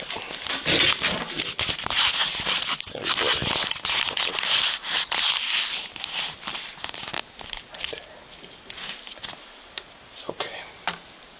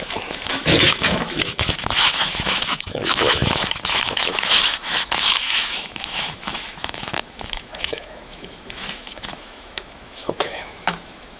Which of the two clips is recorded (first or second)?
first